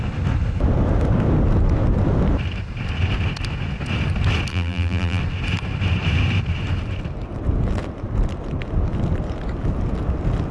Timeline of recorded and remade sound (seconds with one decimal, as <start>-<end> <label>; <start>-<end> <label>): 0.0-4.5 recorded; 4.5-5.2 remade; 5.2-10.5 recorded